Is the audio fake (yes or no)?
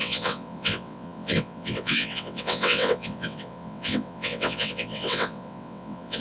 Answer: yes